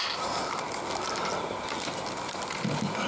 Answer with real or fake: real